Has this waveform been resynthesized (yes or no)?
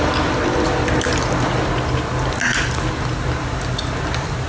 no